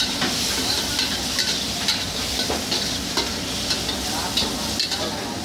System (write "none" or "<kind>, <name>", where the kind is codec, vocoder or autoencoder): none